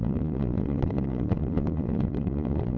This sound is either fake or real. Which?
fake